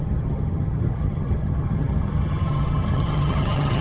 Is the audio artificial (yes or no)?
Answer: yes